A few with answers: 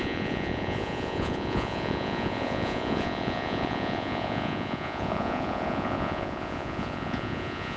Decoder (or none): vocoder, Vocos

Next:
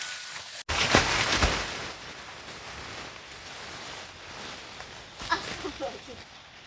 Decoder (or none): none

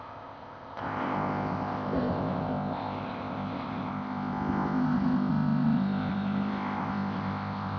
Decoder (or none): codec, ZipCodec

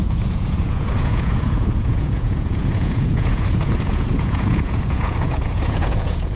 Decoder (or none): vocoder, Vocos